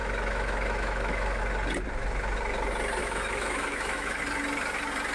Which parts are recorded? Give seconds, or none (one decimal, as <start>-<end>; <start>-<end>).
1.4-3.0; 4.2-5.1